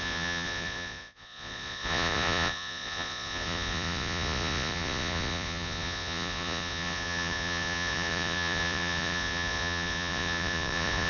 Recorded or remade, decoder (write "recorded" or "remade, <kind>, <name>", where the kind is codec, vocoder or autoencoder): remade, vocoder, Vocos